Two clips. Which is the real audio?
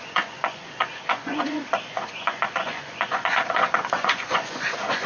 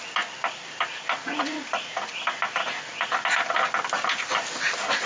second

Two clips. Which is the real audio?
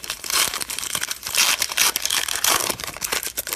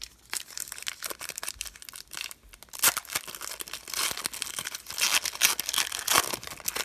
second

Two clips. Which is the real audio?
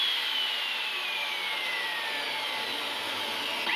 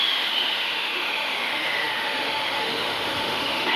first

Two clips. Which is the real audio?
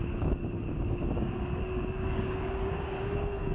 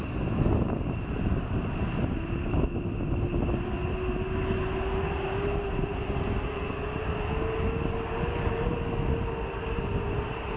second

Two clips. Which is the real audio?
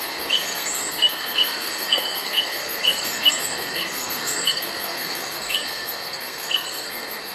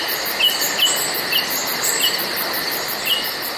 second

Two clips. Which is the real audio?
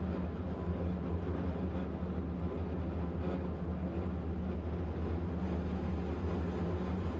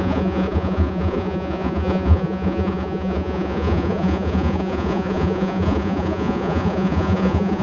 first